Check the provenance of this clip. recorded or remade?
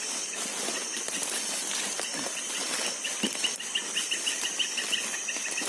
recorded